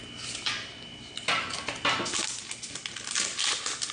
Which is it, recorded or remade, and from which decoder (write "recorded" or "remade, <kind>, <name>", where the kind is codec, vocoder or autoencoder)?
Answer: recorded